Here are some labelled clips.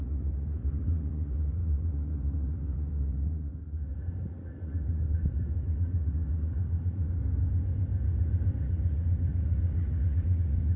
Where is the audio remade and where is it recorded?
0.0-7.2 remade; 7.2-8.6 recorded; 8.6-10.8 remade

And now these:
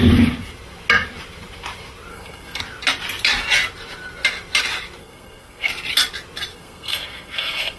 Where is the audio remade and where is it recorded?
0.0-2.1 recorded; 2.1-2.6 remade; 2.6-5.0 recorded; 5.0-5.7 remade; 5.7-6.5 recorded; 6.5-7.8 remade

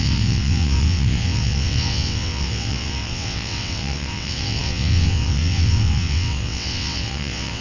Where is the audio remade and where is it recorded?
0.0-7.6 remade

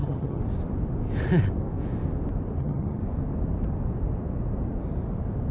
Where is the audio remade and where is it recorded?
0.0-0.4 remade; 0.4-2.6 recorded; 2.6-3.0 remade; 3.0-5.5 recorded

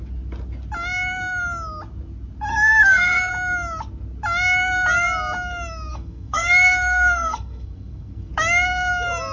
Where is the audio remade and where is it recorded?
0.0-2.5 recorded; 2.5-3.3 remade; 3.3-5.9 recorded; 5.9-8.3 remade; 8.3-9.3 recorded